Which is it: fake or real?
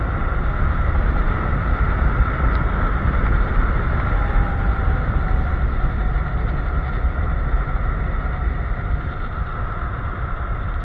real